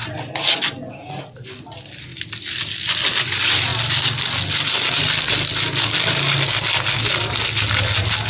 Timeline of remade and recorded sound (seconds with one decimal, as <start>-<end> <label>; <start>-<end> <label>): 0.0-8.3 recorded